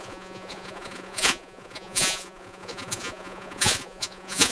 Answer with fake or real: fake